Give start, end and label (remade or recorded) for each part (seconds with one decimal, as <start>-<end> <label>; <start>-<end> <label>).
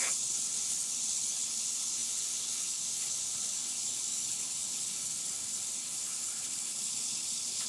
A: 0.0-7.7 remade